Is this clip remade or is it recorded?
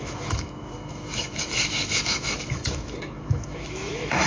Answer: remade